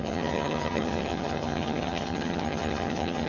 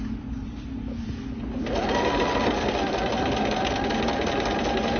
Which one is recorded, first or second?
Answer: second